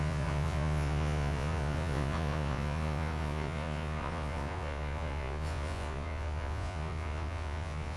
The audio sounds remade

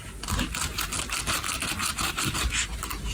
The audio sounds recorded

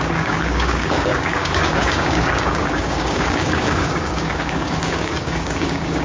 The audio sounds remade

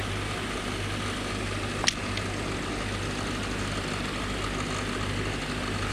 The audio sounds recorded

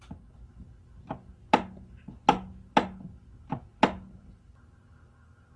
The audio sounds recorded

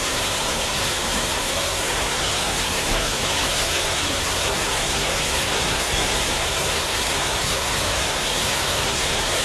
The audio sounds remade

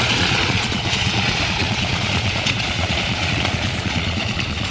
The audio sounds remade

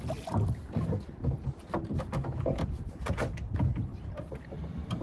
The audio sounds recorded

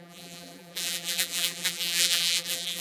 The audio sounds remade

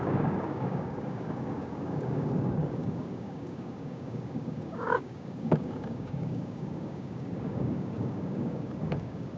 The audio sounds remade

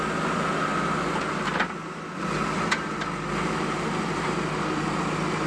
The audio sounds recorded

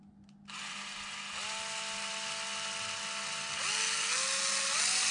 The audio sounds recorded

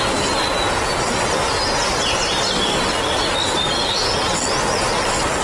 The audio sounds recorded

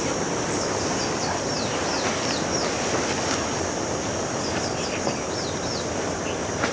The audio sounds recorded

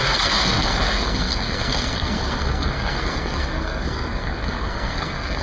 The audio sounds remade